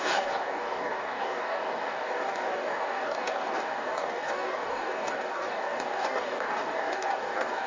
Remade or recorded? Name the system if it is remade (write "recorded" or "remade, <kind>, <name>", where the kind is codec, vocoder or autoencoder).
remade, codec, DAC